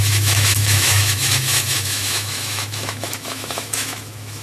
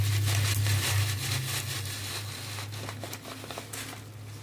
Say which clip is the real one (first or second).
second